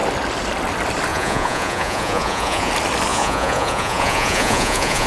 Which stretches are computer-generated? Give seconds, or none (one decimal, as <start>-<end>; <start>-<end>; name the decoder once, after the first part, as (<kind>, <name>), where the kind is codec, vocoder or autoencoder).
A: 1.1-2.7 (vocoder, Vocos); 3.1-5.1